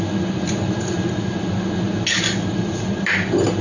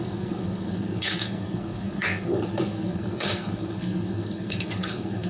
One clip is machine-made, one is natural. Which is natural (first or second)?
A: first